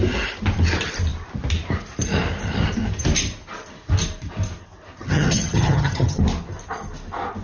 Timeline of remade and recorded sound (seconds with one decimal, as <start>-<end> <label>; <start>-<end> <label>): 0.0-5.0 recorded; 5.0-6.2 remade; 6.2-7.4 recorded